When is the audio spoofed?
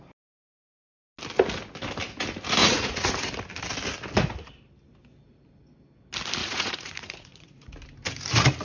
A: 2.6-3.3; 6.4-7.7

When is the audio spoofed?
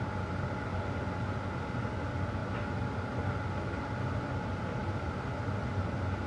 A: none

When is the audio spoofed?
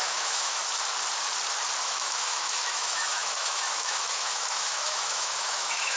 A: 0.0-0.6; 1.8-6.0